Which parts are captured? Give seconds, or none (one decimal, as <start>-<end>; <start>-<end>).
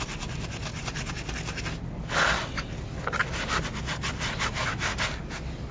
0.7-4.1; 4.9-5.7